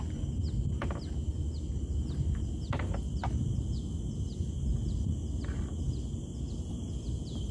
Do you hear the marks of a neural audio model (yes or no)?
no